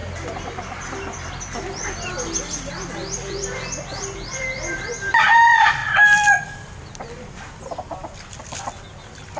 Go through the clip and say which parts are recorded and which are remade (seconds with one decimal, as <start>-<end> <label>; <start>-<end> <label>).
0.0-1.3 remade; 1.3-3.0 recorded; 3.0-4.9 remade; 4.9-5.8 recorded; 5.8-8.8 remade; 8.8-9.4 recorded